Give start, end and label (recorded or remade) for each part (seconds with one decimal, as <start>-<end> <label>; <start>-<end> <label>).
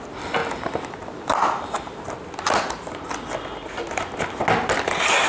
0.0-5.3 recorded